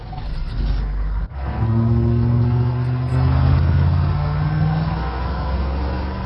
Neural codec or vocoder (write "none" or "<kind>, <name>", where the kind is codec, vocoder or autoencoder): codec, SNAC